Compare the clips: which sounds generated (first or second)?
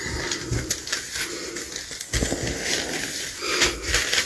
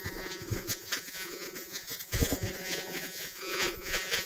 second